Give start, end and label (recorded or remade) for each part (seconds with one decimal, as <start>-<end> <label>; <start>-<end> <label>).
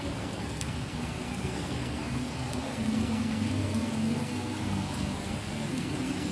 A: 0.0-6.3 remade